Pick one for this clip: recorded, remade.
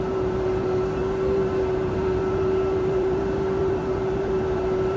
remade